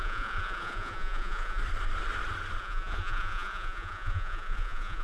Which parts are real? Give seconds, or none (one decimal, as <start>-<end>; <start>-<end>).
1.6-2.6